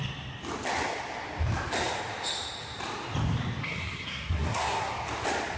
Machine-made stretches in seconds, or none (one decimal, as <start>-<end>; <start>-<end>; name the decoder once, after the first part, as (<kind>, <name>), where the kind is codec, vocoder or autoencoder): 3.6-4.9 (codec, SNAC)